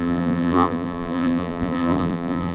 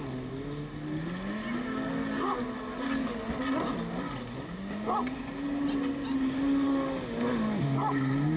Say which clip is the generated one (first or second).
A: first